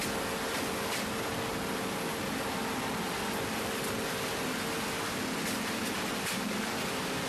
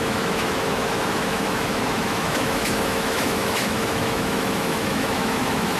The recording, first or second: first